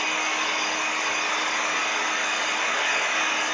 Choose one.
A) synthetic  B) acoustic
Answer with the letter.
A